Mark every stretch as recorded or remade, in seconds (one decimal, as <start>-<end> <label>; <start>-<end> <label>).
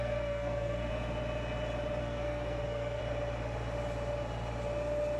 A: 0.0-0.9 remade; 0.9-2.0 recorded; 2.0-3.0 remade; 3.0-5.2 recorded